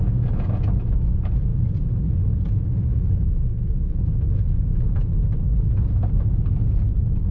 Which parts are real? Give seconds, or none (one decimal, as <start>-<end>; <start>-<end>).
5.1-5.7